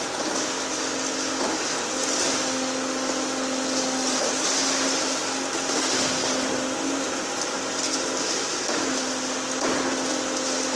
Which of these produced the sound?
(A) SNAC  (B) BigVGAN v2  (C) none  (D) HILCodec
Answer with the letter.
C